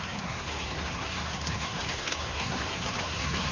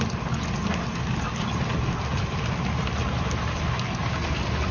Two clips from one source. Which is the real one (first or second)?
second